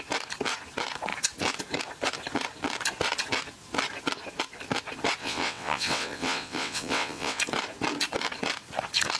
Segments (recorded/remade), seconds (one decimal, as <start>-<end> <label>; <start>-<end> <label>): 0.0-5.2 recorded; 5.2-7.4 remade; 7.4-9.2 recorded